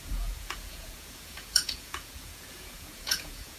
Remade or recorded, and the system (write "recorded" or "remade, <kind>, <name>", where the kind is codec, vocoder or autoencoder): remade, vocoder, Vocos